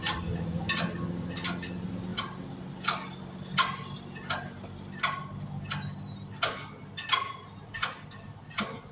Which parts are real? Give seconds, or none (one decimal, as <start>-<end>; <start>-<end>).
0.0-8.9